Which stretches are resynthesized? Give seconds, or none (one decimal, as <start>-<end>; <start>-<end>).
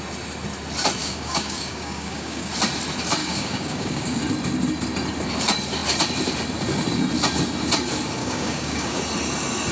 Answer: 1.0-2.5; 3.2-4.2; 8.2-9.0